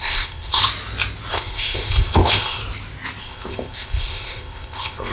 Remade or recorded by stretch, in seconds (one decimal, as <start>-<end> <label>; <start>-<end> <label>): 0.0-0.6 remade; 0.6-1.3 recorded; 1.3-2.6 remade; 2.6-3.2 recorded; 3.2-5.1 remade

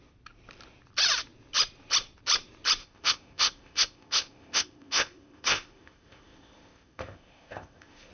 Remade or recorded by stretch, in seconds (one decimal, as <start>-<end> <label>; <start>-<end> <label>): 0.0-2.8 recorded; 2.8-8.1 remade

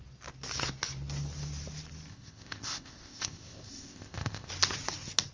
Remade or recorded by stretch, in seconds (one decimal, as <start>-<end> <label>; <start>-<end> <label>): 0.0-2.1 recorded; 2.1-4.5 remade; 4.5-5.3 recorded

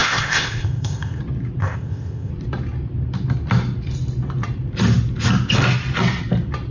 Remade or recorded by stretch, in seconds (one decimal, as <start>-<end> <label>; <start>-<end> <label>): 0.0-1.2 remade; 1.2-1.6 recorded; 1.6-2.3 remade; 2.3-6.7 recorded

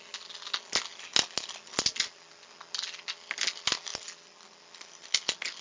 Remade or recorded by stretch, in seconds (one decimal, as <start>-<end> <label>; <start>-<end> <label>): 0.0-5.6 recorded

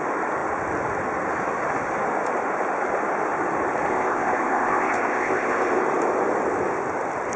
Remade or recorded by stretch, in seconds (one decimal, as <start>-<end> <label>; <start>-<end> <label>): 0.0-3.9 recorded; 3.9-5.8 remade; 5.8-7.4 recorded

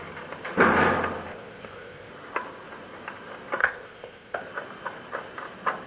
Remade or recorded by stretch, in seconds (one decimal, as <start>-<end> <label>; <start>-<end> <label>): 0.0-1.3 recorded; 1.3-2.1 remade; 2.1-3.6 recorded; 3.6-4.4 remade; 4.4-5.9 recorded